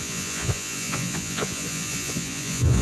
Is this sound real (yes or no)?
no